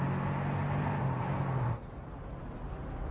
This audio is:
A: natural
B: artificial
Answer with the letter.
A